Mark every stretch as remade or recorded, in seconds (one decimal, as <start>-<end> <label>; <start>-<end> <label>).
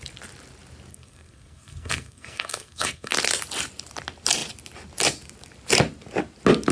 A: 0.0-0.9 recorded; 0.9-3.1 remade; 3.1-6.7 recorded